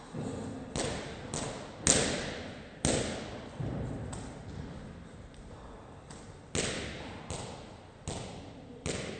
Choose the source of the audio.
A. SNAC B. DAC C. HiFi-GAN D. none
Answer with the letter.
D